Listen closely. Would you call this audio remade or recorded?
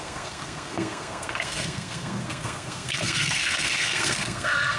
remade